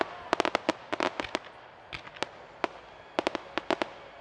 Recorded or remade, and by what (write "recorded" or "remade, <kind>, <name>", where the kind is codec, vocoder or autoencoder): recorded